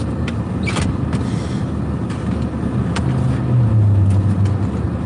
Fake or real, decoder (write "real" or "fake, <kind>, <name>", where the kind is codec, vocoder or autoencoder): real